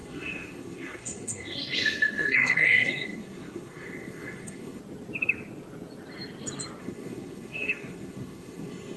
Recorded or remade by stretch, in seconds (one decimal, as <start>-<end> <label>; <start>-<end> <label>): 0.0-4.8 remade; 4.8-6.8 recorded; 6.8-9.0 remade